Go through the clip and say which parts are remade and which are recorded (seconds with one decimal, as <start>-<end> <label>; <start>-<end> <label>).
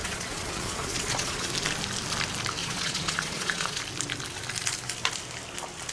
0.0-1.5 remade; 1.5-2.6 recorded; 2.6-3.8 remade; 3.8-5.9 recorded